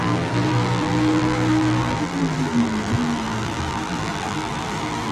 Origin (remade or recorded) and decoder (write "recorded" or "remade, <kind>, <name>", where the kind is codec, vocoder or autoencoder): remade, vocoder, BigVGAN v2